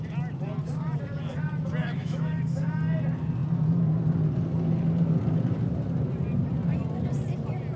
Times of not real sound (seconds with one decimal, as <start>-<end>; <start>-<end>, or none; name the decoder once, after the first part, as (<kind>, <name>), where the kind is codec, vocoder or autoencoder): 1.8-2.6 (autoencoder, DAC-VAE)